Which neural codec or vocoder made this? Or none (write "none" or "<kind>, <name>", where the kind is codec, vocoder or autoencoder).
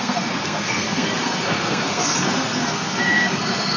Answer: codec, SNAC